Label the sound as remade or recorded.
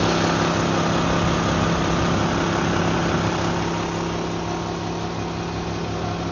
recorded